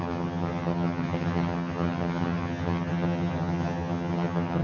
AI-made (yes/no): yes